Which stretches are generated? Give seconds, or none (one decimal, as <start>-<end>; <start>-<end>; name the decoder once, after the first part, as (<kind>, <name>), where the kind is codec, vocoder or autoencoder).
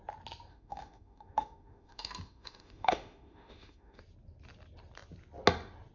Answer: 0.5-4.0 (autoencoder, DAC-VAE)